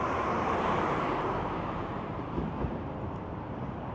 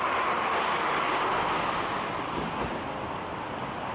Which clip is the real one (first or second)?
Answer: second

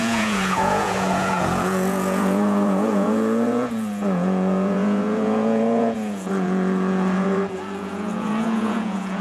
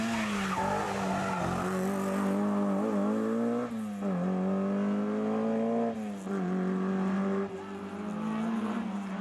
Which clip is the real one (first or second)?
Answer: second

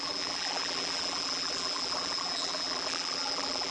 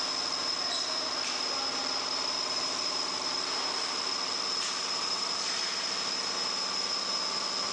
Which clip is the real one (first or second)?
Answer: second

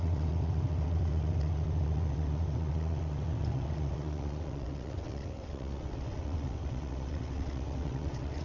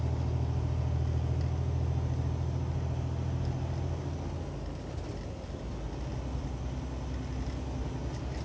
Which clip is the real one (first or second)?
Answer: second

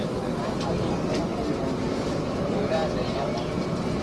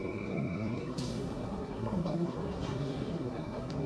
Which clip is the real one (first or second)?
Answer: first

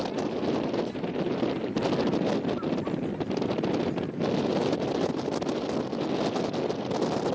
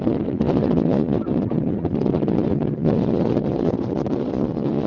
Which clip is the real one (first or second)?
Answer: first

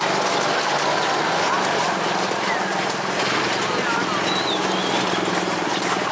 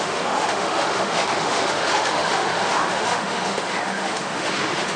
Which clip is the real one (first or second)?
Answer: first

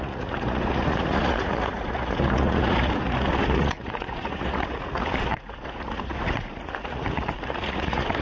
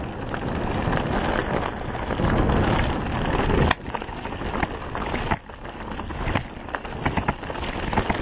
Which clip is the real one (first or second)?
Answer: second